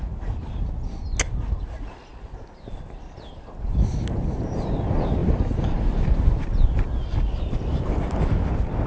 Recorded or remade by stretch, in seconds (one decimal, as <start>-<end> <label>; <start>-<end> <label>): 0.0-8.9 recorded